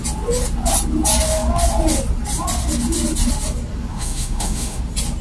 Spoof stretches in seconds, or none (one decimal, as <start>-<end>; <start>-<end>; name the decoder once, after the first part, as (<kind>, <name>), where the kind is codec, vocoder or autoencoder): 3.9-4.8 (autoencoder, DAC-VAE)